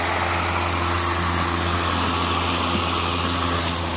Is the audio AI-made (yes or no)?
no